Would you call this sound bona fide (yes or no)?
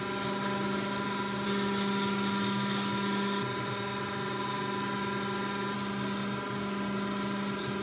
yes